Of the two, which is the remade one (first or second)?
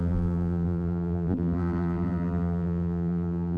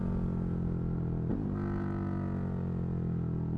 first